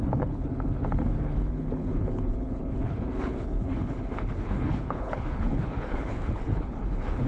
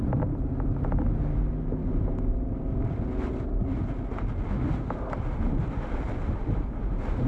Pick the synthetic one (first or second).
first